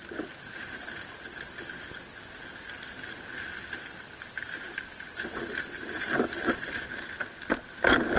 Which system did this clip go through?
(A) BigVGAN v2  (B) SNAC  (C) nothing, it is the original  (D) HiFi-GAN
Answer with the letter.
C